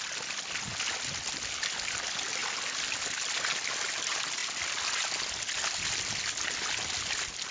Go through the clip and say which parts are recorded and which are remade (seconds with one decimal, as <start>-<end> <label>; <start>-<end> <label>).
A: 0.0-7.5 recorded